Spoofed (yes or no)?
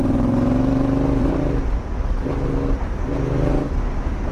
no